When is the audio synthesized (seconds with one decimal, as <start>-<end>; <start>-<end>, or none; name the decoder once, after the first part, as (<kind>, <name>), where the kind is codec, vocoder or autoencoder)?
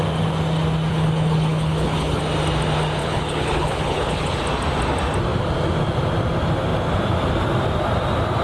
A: 0.9-2.2 (codec, HILCodec); 3.0-4.4